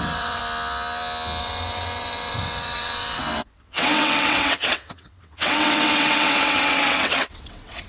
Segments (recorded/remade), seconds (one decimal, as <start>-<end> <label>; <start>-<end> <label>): 0.0-0.4 remade; 0.4-1.4 recorded; 1.4-7.9 remade

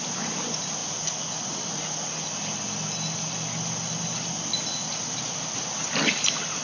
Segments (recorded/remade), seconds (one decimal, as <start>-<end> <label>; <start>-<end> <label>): 0.0-6.6 recorded

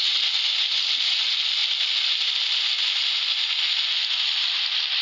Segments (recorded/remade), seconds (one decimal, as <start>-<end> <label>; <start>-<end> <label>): 0.0-5.0 recorded